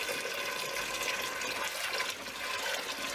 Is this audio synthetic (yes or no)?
no